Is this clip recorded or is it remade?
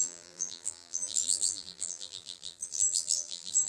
remade